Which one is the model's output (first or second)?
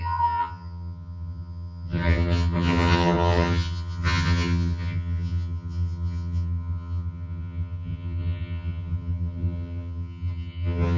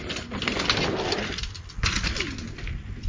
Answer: first